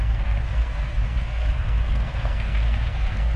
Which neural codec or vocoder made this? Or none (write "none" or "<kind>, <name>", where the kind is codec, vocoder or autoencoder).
codec, SNAC